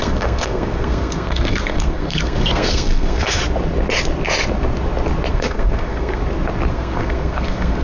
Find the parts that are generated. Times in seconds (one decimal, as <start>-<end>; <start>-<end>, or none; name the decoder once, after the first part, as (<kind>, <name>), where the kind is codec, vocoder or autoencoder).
0.0-3.4 (codec, SNAC); 5.3-6.2; 6.7-7.8